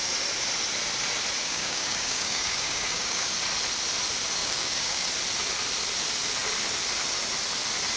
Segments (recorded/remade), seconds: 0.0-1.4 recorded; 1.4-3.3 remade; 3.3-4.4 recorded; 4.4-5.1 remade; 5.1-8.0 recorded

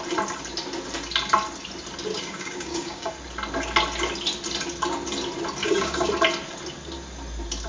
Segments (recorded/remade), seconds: 0.0-2.1 recorded; 2.1-3.1 remade; 3.1-5.6 recorded; 5.6-6.1 remade; 6.1-7.7 recorded

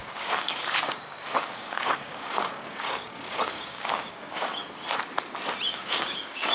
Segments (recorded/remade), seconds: 0.0-4.6 remade; 4.6-5.7 recorded; 5.7-6.5 remade

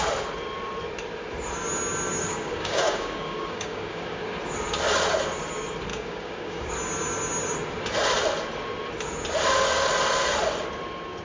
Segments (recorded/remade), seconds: 0.0-2.2 recorded; 2.2-4.2 remade; 4.2-5.9 recorded; 5.9-6.7 remade; 6.7-11.2 recorded

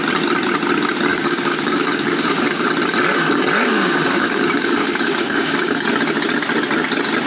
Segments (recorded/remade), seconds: 0.0-1.1 recorded; 1.1-2.7 remade; 2.7-3.7 recorded; 3.7-5.9 remade; 5.9-7.3 recorded

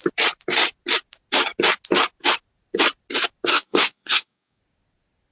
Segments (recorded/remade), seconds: 0.0-3.5 recorded; 3.5-4.6 remade; 4.6-5.3 recorded

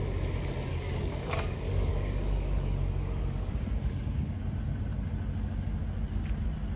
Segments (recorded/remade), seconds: 0.0-0.7 recorded; 0.7-3.5 remade; 3.5-6.8 recorded

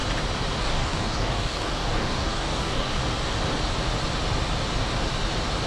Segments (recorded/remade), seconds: 0.0-0.6 recorded; 0.6-3.0 remade; 3.0-5.7 recorded